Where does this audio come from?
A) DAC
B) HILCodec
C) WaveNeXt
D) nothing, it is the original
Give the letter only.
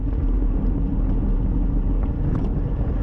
D